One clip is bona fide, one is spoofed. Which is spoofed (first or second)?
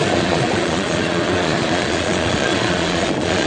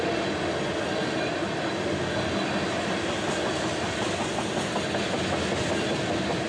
first